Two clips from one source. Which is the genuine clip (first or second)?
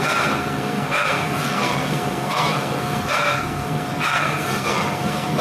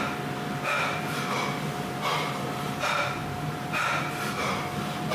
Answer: second